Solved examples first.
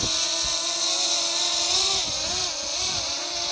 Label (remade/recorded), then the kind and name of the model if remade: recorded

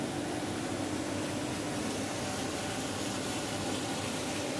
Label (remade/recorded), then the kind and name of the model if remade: recorded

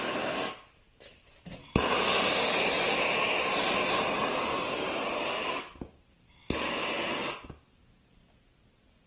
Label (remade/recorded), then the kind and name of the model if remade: recorded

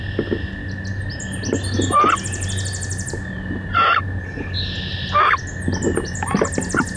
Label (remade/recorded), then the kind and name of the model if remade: recorded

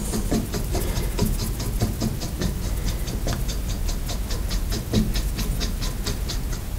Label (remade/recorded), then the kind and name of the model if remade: recorded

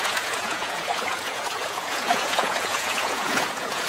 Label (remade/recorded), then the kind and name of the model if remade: remade, vocoder, Vocos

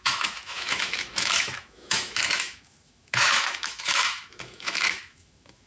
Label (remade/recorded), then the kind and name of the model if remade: remade, autoencoder, DAC-VAE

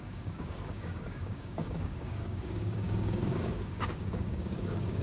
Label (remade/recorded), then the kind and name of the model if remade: remade, codec, DAC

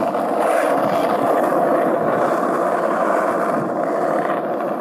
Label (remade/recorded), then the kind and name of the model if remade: recorded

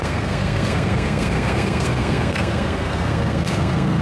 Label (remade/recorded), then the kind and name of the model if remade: remade, codec, SNAC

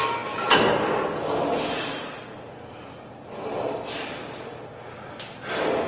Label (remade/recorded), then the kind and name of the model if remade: recorded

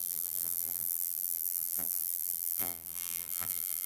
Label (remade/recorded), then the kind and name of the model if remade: remade, vocoder, BigVGAN v2